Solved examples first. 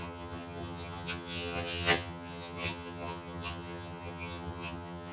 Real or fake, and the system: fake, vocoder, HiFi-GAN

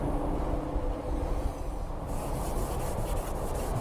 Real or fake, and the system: real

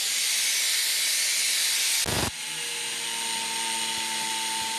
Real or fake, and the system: real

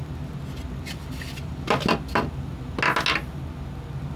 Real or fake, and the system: real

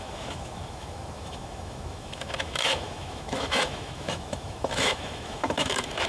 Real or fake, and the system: fake, autoencoder, DAC-VAE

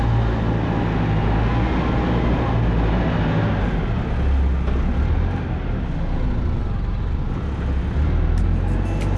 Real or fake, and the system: real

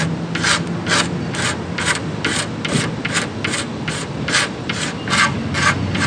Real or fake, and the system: real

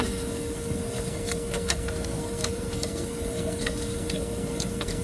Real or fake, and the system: fake, codec, SNAC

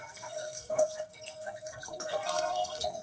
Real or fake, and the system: fake, codec, SNAC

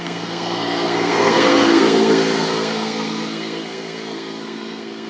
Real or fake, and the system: fake, codec, SNAC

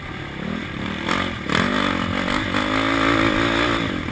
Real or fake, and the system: real